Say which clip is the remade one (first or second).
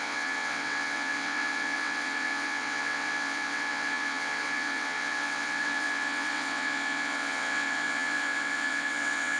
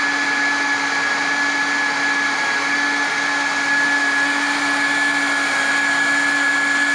first